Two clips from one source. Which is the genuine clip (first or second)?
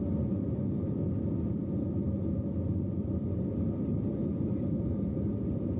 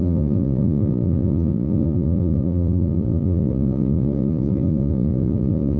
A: first